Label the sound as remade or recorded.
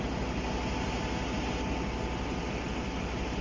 recorded